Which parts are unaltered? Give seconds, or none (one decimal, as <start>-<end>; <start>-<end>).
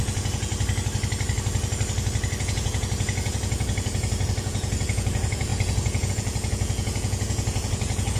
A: 0.5-2.4